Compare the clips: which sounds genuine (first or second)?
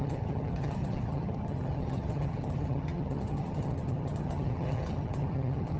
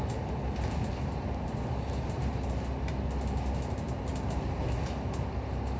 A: second